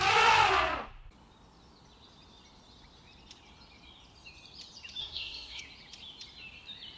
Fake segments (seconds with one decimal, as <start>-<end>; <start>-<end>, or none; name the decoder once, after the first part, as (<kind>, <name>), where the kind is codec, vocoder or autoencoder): 5.0-5.6 (codec, SNAC)